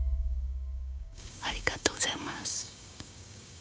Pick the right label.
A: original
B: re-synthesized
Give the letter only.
B